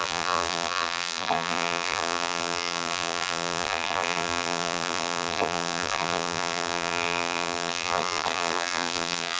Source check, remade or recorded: remade